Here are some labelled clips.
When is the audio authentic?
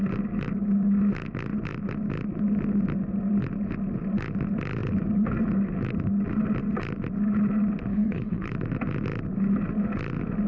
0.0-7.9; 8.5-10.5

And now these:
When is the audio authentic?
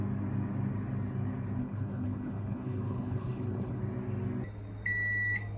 0.0-1.6; 3.8-5.6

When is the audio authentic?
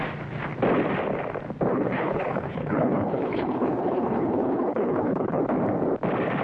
0.0-1.7; 5.4-6.4